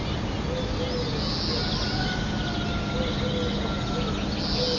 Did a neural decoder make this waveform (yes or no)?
no